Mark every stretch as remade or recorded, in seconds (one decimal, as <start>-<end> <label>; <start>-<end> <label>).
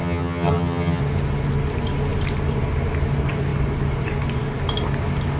0.0-1.0 remade; 1.0-5.4 recorded